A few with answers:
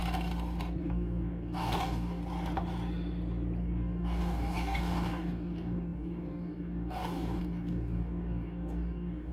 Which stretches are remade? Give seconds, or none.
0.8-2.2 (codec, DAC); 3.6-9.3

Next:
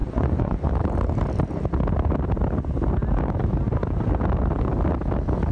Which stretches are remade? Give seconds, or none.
0.0-0.7 (vocoder, Vocos)

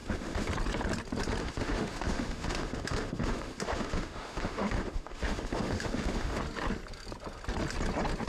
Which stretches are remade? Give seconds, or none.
0.0-0.5 (autoencoder, DAC-VAE); 1.4-6.4

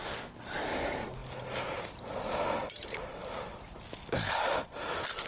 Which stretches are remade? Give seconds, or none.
none

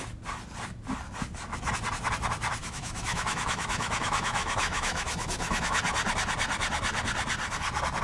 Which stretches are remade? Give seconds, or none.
2.6-5.8 (autoencoder, DAC-VAE)

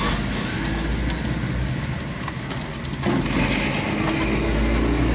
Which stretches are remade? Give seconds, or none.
none

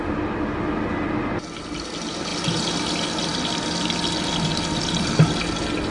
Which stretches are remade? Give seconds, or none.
3.3-4.3 (vocoder, BigVGAN v2)